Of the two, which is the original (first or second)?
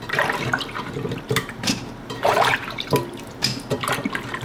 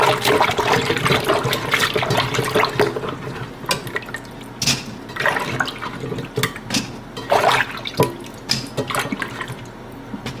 second